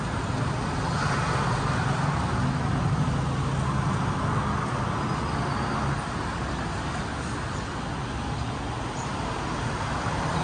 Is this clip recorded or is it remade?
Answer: recorded